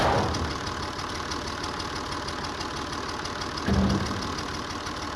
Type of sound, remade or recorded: recorded